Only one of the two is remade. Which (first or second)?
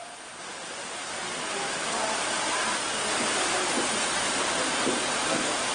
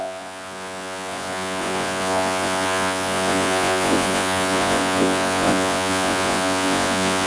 second